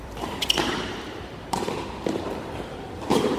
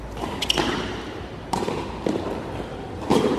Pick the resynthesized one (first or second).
first